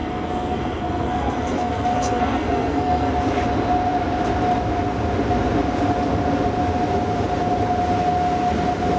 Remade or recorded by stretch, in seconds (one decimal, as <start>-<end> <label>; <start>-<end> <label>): 0.0-3.1 remade; 3.1-9.0 recorded